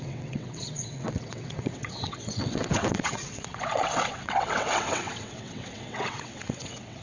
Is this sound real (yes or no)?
no